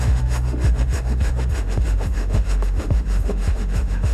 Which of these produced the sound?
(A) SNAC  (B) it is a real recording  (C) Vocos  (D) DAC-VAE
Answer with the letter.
D